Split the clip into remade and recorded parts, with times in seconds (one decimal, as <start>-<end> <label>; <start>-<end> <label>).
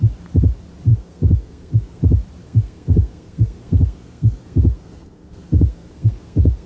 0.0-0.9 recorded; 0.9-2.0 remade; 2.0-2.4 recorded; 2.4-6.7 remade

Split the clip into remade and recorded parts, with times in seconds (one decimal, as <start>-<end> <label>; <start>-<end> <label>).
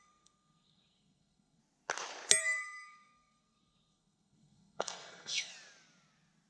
0.0-1.6 remade; 1.6-2.4 recorded; 2.4-5.5 remade; 5.5-6.5 recorded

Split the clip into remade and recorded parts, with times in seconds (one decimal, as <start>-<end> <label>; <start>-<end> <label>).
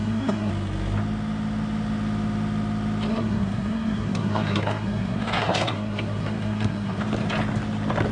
0.0-0.5 remade; 0.5-3.1 recorded; 3.1-7.0 remade; 7.0-8.1 recorded